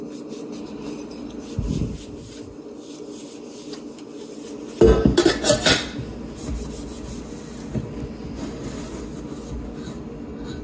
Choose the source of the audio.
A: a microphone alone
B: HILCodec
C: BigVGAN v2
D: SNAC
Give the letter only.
A